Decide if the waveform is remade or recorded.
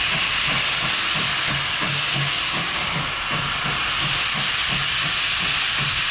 recorded